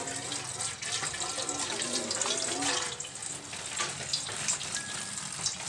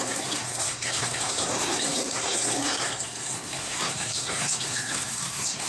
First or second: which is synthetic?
second